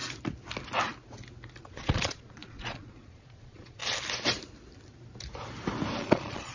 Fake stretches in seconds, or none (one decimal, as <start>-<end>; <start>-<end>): 1.6-3.8; 6.0-6.5